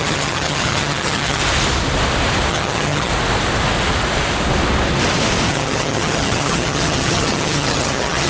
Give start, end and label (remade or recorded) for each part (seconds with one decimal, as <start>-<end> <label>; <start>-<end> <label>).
0.0-1.4 remade; 1.4-2.5 recorded; 2.5-3.1 remade; 3.1-5.5 recorded; 5.5-8.3 remade